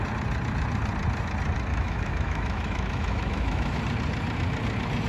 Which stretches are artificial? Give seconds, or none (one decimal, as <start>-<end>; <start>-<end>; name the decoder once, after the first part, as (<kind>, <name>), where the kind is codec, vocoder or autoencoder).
1.7-3.8 (autoencoder, DAC-VAE)